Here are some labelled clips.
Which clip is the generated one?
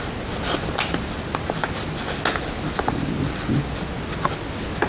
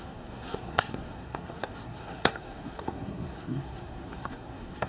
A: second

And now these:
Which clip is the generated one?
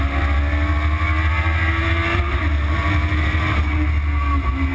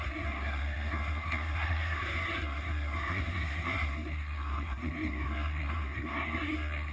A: second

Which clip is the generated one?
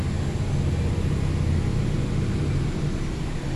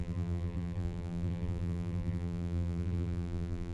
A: second